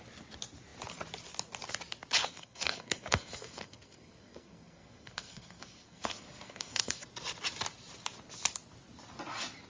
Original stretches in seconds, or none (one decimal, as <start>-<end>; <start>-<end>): 0.0-2.2; 7.0-9.7